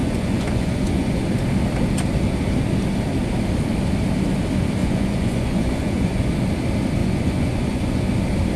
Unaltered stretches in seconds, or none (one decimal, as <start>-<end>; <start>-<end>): 1.2-4.8; 6.3-7.0; 8.1-8.6